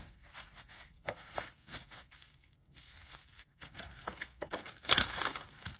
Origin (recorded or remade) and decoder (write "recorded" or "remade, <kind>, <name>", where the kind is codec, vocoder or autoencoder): remade, codec, SNAC